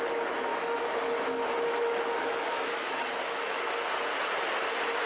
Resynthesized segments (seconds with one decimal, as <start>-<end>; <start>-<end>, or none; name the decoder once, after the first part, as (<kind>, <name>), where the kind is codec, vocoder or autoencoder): 0.5-3.6 (autoencoder, DAC-VAE)